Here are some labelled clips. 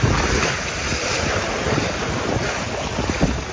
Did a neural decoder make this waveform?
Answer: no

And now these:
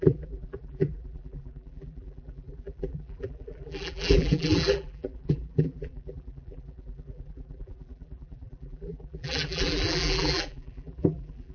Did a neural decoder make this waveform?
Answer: yes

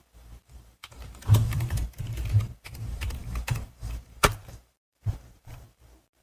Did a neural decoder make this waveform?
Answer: yes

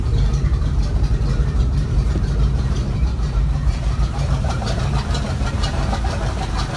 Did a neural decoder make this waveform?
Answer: yes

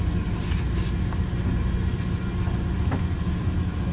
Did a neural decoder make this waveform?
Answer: no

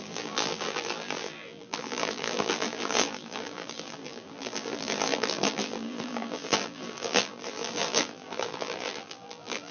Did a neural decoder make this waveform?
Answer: yes